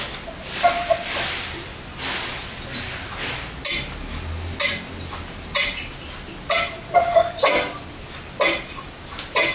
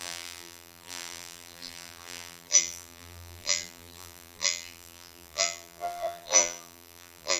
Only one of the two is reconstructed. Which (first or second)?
second